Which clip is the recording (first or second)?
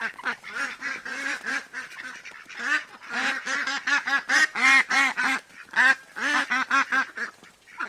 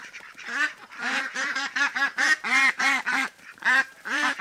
first